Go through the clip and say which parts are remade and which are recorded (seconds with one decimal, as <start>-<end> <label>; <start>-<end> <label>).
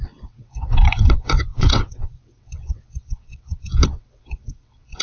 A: 0.0-5.0 remade